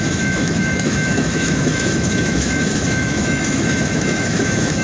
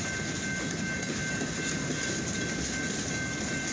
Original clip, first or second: second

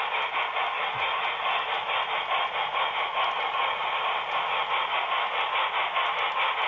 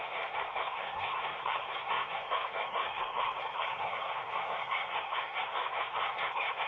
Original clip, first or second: first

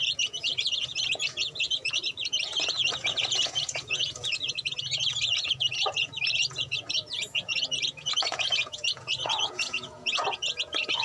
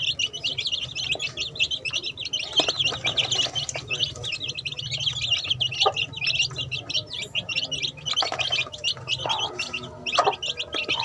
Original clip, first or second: second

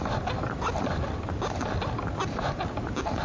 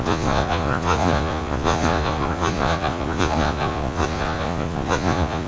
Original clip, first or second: first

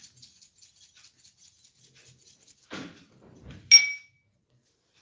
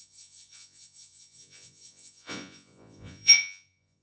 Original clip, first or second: first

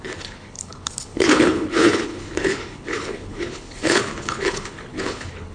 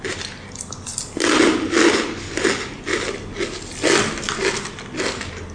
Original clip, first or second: second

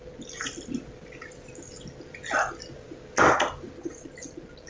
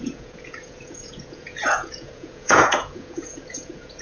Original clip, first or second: first